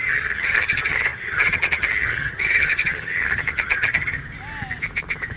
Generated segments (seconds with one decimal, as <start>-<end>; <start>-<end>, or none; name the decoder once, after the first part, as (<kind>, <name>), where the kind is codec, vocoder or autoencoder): 0.0-4.2 (vocoder, HiFi-GAN)